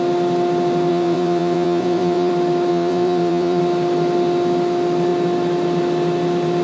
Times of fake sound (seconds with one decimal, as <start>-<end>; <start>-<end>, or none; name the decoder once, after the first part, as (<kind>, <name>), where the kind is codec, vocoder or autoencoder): 0.9-2.3 (vocoder, WaveNeXt); 2.7-3.6